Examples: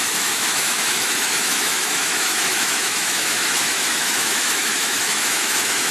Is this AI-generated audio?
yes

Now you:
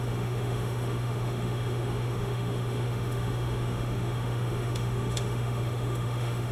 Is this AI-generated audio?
yes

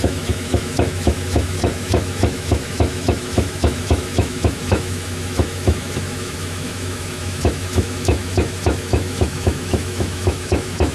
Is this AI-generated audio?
yes